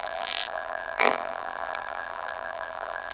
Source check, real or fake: fake